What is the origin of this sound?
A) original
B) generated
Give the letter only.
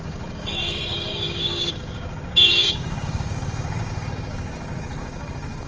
B